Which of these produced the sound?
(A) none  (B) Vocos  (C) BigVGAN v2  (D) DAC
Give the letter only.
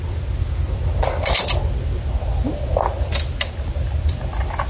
A